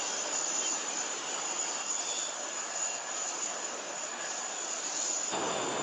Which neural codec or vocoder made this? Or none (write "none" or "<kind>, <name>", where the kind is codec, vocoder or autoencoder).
none